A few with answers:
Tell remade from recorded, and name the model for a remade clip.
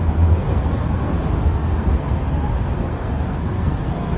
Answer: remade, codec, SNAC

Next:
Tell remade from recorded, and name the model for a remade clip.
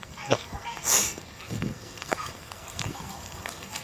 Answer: remade, codec, SNAC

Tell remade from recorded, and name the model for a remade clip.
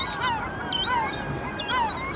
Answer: recorded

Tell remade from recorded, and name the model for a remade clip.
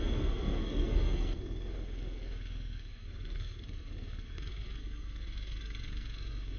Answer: remade, codec, SNAC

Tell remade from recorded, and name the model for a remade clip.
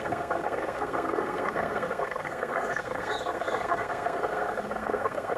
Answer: remade, codec, SNAC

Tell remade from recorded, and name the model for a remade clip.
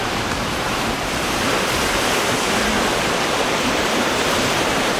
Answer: remade, vocoder, BigVGAN v2